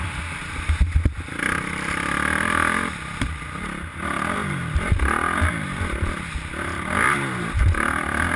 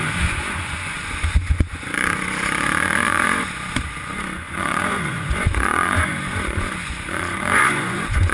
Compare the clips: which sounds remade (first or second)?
second